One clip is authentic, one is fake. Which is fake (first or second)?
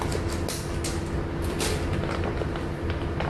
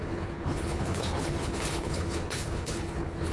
second